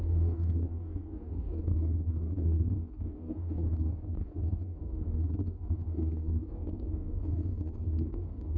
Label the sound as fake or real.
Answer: fake